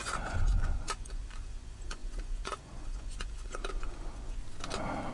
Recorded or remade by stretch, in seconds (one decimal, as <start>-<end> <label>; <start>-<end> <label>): 0.0-4.4 remade; 4.4-5.1 recorded